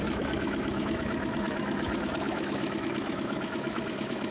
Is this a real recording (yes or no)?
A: no